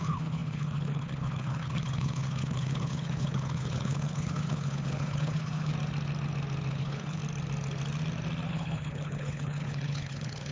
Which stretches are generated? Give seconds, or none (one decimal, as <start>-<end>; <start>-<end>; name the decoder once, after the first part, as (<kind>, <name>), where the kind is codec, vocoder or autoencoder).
0.0-5.7 (codec, HILCodec); 6.7-7.2; 8.5-10.5